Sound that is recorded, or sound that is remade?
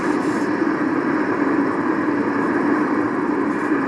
recorded